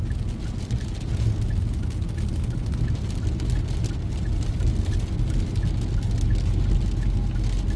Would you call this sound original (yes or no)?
yes